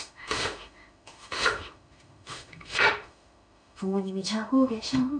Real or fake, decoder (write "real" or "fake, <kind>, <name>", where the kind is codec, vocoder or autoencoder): fake, autoencoder, DAC-VAE